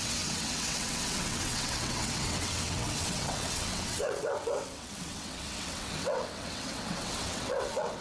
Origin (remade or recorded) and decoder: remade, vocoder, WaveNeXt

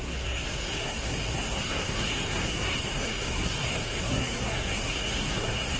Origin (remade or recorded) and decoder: remade, codec, SNAC